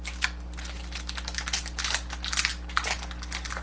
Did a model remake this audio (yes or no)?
no